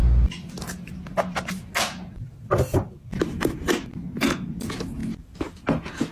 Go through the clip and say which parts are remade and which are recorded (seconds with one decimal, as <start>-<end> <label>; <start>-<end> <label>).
0.0-3.1 recorded; 3.1-3.7 remade; 3.7-6.1 recorded